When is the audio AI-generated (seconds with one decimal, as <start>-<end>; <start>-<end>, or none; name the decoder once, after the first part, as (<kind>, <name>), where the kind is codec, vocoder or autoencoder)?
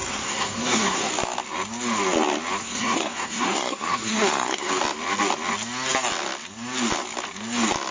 0.0-1.1 (codec, SNAC); 2.6-4.7